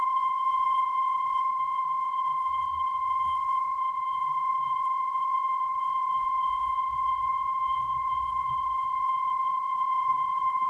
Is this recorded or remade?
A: remade